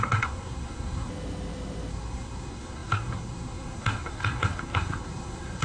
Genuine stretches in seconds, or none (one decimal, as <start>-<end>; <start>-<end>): 1.1-1.9